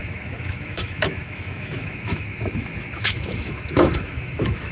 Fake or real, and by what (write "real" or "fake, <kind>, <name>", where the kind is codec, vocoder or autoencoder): fake, autoencoder, DAC-VAE